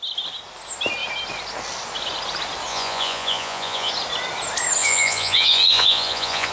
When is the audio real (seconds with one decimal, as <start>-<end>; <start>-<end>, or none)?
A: 0.0-2.7; 3.9-4.8